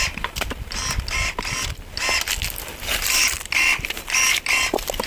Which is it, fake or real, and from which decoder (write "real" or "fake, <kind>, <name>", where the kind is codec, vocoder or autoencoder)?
real